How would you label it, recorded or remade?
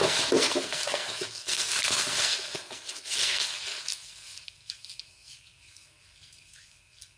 remade